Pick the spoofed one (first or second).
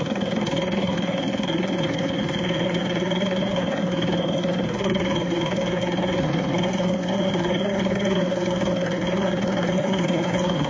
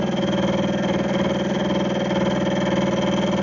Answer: first